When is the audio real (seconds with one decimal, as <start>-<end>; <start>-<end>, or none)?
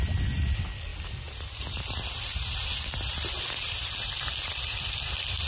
0.0-5.5